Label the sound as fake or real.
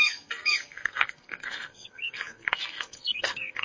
fake